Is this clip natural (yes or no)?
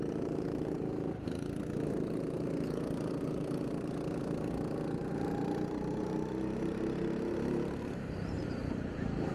no